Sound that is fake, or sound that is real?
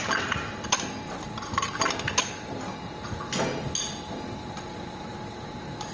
real